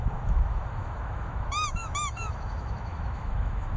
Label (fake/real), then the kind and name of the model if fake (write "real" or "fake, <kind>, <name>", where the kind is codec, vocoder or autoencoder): fake, autoencoder, DAC-VAE